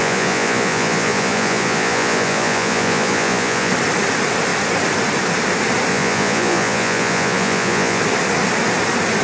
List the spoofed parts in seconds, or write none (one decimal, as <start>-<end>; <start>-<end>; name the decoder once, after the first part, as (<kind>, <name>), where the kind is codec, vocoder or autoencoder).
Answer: 0.0-3.7 (vocoder, Vocos); 5.9-8.0